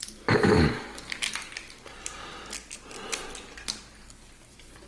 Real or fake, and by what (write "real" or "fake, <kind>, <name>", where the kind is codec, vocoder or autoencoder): real